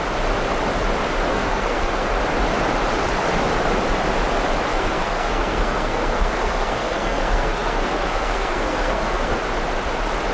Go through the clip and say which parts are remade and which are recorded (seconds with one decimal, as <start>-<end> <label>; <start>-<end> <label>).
0.0-1.3 recorded; 1.3-2.2 remade; 2.2-4.7 recorded; 4.7-9.3 remade; 9.3-10.3 recorded